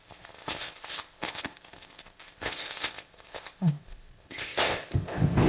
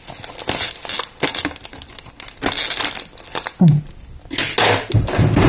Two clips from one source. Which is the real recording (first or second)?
second